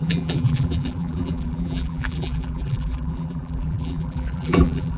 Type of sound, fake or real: fake